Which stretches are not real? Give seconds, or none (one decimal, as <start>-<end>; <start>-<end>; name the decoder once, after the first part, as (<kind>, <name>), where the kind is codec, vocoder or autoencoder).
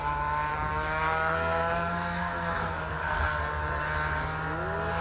0.5-3.5 (codec, SNAC)